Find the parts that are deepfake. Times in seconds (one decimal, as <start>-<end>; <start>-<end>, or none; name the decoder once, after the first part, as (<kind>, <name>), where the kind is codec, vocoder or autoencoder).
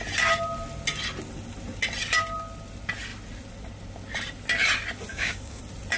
5.1-5.6 (codec, DAC)